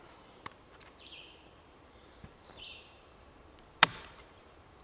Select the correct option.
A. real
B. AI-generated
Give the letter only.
B